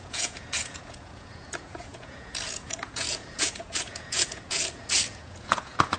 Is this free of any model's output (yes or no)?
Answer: no